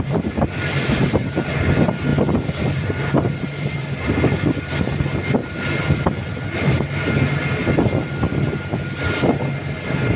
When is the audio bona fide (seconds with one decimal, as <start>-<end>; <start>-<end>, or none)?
0.0-2.1; 4.6-5.4; 7.1-10.2